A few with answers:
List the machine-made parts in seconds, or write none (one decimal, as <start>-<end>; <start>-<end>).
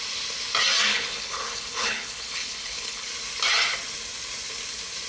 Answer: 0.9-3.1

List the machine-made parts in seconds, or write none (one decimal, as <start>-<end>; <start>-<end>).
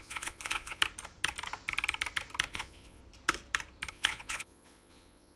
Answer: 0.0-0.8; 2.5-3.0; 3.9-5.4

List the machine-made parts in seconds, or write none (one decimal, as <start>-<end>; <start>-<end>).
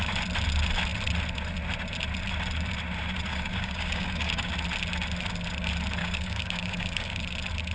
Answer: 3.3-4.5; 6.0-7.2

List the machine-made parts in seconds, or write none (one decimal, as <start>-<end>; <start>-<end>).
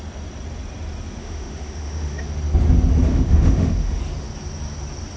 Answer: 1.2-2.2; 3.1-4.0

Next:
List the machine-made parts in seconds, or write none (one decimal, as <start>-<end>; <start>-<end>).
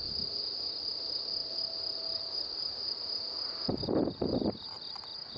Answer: none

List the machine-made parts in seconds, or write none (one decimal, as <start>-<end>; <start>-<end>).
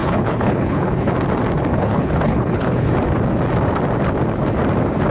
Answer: 0.0-1.1; 1.7-2.9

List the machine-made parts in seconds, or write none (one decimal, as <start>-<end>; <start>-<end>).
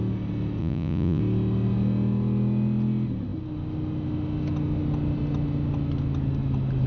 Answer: 0.6-1.2